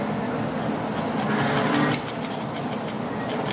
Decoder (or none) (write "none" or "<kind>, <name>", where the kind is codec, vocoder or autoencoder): none